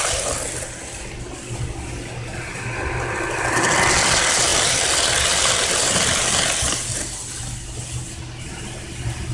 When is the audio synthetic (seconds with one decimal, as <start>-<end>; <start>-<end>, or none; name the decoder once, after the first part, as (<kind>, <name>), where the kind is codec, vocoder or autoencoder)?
4.5-6.4 (vocoder, BigVGAN v2)